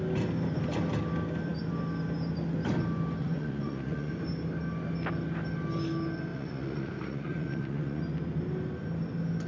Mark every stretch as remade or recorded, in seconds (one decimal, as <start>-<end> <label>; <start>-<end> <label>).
0.0-3.2 recorded; 3.2-4.1 remade; 4.1-6.3 recorded; 6.3-8.0 remade; 8.0-9.5 recorded